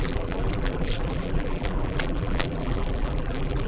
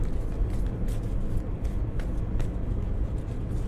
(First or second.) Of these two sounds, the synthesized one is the first